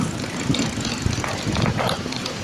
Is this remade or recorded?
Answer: recorded